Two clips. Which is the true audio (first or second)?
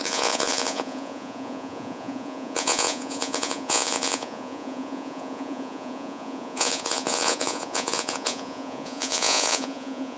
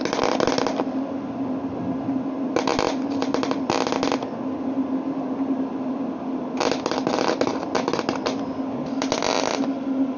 second